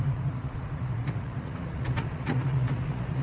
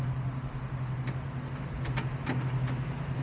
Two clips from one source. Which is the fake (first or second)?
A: first